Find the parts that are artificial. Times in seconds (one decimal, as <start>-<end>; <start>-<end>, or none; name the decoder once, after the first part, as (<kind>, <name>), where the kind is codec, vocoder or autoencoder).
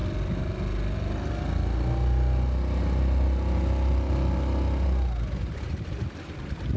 none